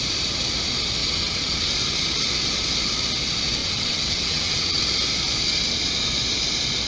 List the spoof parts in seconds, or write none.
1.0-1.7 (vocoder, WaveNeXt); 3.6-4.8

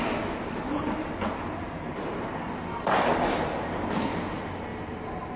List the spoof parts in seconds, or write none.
none

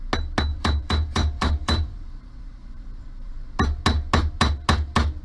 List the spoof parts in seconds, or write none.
0.5-3.6 (vocoder, BigVGAN v2)

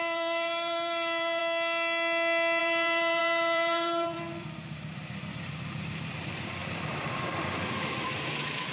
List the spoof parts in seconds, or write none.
0.0-1.4 (vocoder, BigVGAN v2); 2.6-8.7

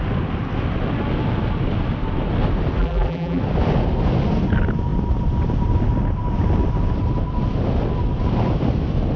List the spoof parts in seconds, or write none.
2.8-3.4 (vocoder, BigVGAN v2)

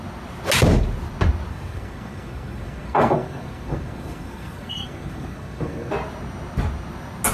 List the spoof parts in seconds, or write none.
1.5-5.9 (codec, SNAC)